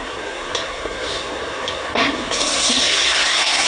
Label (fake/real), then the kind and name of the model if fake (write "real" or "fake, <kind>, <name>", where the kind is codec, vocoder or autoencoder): fake, codec, SNAC